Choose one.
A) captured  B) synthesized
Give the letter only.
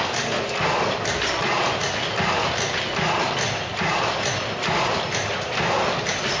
B